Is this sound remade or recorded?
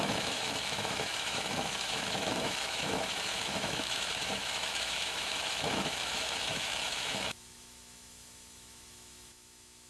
remade